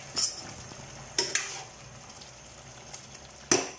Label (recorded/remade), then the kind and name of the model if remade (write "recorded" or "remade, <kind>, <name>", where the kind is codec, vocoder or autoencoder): recorded